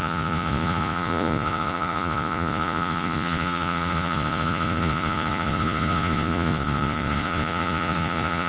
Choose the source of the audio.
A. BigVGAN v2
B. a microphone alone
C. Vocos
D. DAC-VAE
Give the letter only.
C